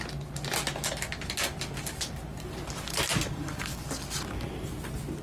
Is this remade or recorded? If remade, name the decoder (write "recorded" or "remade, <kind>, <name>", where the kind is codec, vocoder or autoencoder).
recorded